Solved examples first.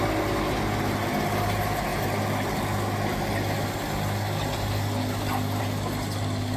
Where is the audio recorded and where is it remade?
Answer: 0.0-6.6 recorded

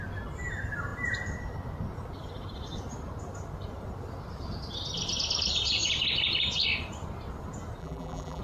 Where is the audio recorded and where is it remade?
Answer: 0.0-7.8 recorded; 7.8-8.4 remade

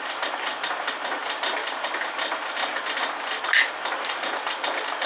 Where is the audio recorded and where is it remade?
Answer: 0.0-5.1 recorded

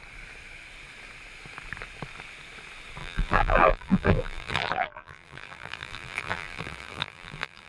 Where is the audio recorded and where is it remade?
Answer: 0.0-3.0 recorded; 3.0-7.7 remade